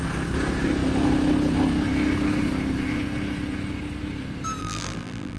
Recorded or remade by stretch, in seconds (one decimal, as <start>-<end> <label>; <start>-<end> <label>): 0.0-4.6 recorded; 4.6-5.4 remade